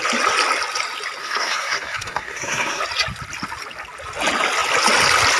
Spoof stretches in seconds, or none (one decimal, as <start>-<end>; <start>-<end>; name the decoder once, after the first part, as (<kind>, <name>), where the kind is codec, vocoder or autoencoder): 1.2-2.8 (codec, SNAC)